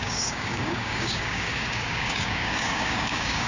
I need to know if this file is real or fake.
fake